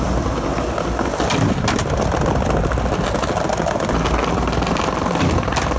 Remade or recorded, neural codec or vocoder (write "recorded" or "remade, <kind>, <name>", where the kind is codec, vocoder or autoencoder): recorded